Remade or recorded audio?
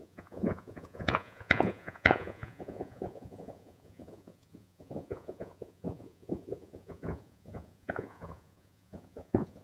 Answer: remade